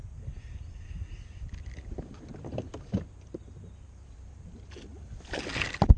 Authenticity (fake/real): real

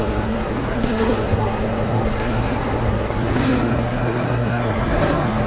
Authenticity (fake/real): fake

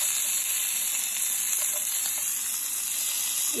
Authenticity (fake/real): real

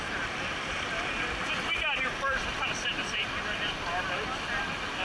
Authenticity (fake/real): real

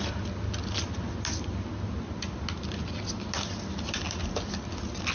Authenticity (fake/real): real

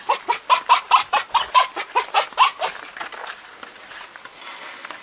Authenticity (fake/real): real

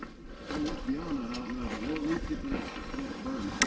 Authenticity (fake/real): real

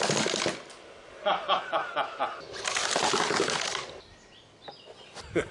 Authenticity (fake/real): real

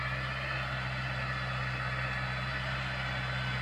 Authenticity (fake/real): real